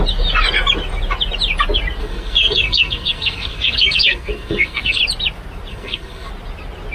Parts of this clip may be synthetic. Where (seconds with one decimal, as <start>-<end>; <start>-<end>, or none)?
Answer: 2.0-5.0; 5.7-6.3